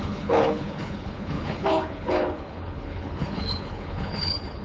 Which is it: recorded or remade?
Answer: remade